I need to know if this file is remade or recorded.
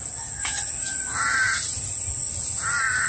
recorded